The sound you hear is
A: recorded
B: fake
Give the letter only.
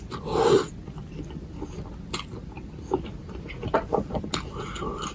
A